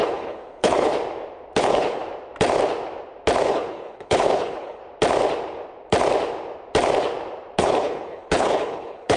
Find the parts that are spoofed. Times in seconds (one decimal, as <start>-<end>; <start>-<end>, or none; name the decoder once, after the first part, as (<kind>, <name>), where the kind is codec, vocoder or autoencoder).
0.0-0.9 (codec, HILCodec); 1.6-2.0; 3.4-4.8; 7.6-9.2